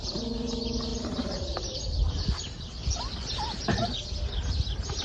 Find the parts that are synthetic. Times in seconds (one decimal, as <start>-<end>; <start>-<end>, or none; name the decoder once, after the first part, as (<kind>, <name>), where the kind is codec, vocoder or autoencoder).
0.9-3.9 (vocoder, BigVGAN v2)